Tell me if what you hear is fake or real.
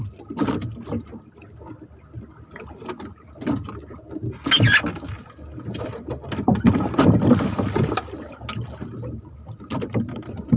real